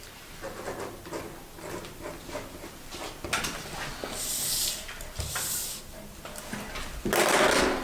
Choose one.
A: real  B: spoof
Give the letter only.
A